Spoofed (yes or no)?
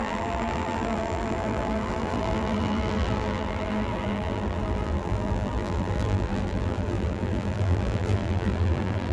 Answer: yes